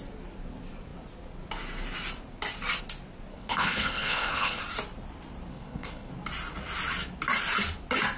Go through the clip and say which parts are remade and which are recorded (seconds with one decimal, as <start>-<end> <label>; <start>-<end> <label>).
0.0-3.3 recorded; 3.3-4.6 remade; 4.6-5.5 recorded; 5.5-6.1 remade; 6.1-8.2 recorded